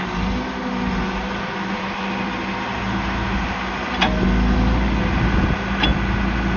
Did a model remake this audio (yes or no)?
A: no